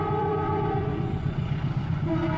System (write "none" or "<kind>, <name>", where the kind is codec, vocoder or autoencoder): vocoder, Vocos